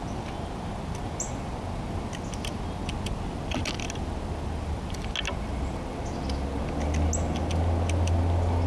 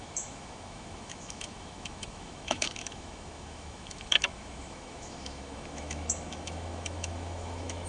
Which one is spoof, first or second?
second